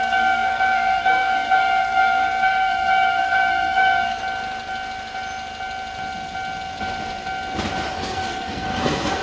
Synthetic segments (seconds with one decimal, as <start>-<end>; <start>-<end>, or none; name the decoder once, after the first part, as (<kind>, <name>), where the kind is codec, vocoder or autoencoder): 0.0-4.2 (codec, SNAC); 7.9-9.2